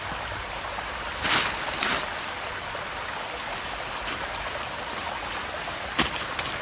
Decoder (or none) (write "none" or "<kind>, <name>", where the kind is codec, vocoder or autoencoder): none